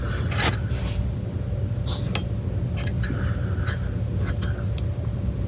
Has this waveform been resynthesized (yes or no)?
no